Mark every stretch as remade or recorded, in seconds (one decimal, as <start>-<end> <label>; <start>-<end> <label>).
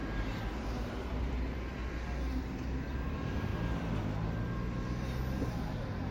0.0-1.0 recorded; 1.0-1.8 remade; 1.8-3.0 recorded; 3.0-3.5 remade; 3.5-5.4 recorded; 5.4-6.1 remade